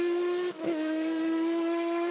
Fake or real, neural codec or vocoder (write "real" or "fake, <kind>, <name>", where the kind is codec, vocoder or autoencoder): fake, autoencoder, DAC-VAE